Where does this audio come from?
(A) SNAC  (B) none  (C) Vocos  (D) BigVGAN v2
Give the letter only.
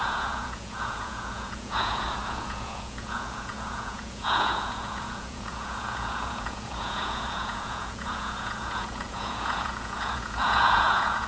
C